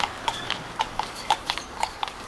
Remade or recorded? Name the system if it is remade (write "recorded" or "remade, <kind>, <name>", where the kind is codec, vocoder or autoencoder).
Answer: remade, codec, DAC